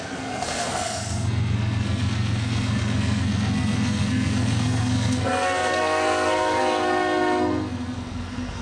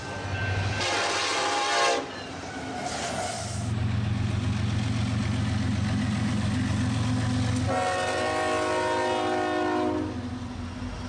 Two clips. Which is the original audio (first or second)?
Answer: second